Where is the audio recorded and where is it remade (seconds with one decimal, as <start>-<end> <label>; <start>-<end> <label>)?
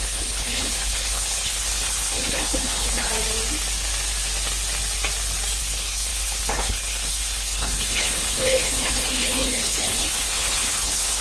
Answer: 0.0-3.1 remade; 3.1-5.6 recorded; 5.6-11.2 remade